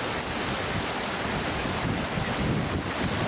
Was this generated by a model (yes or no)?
no